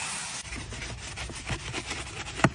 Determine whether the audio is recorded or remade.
recorded